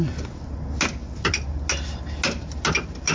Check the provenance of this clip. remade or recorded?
recorded